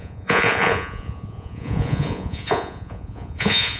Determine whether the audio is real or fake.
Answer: fake